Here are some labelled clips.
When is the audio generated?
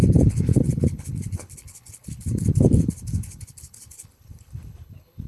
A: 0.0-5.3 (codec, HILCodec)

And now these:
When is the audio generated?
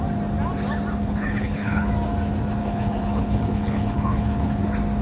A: 1.0-1.9 (codec, HILCodec); 2.6-4.6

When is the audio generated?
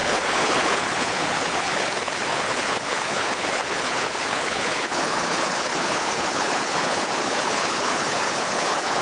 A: 0.0-9.0 (codec, HILCodec)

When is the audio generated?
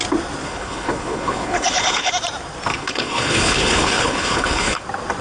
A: 0.4-2.1 (codec, HILCodec); 2.7-4.8